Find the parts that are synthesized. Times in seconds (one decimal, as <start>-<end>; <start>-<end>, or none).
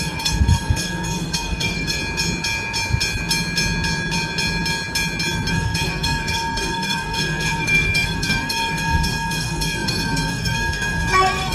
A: 0.0-2.0; 5.5-11.5